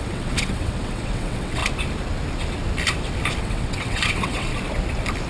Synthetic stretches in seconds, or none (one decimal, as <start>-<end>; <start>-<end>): 0.0-1.6; 3.4-4.5